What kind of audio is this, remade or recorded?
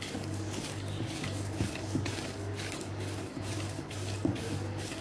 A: remade